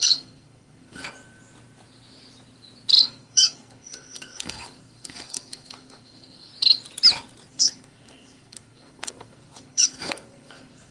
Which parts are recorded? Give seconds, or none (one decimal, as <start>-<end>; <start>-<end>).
1.0-3.0; 6.5-7.5